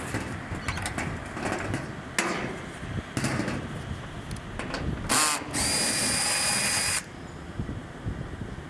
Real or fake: real